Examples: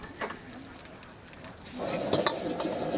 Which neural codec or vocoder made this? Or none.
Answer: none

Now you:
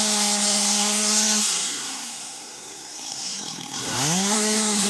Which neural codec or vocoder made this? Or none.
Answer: codec, SNAC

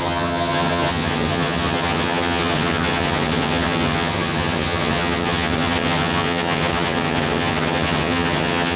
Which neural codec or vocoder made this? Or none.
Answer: vocoder, HiFi-GAN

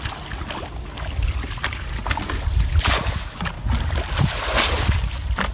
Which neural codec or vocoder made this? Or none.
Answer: none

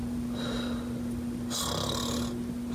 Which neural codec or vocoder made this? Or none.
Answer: none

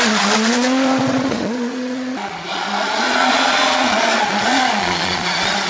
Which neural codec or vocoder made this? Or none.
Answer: vocoder, Vocos